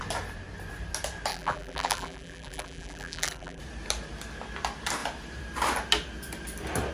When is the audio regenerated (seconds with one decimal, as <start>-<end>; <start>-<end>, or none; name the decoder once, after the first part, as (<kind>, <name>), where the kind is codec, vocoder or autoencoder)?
1.3-3.6 (vocoder, BigVGAN v2)